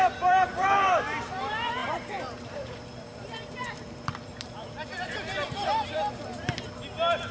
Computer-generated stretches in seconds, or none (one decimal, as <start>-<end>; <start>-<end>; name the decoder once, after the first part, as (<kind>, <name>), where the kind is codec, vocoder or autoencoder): 0.0-7.3 (vocoder, BigVGAN v2)